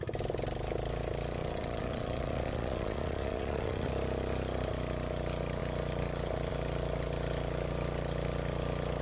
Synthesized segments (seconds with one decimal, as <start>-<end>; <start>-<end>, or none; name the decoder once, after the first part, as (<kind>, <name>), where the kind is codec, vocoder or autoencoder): 1.4-3.9 (vocoder, Vocos)